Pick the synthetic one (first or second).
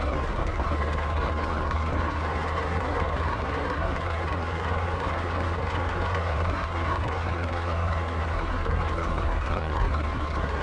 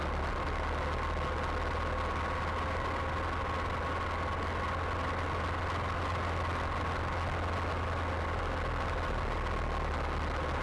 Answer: first